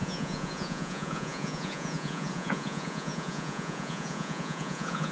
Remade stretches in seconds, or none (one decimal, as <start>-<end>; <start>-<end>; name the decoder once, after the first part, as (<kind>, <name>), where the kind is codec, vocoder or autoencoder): 0.0-5.1 (vocoder, Vocos)